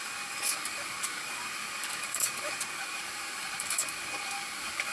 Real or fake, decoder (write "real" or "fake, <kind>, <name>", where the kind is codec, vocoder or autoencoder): fake, codec, DAC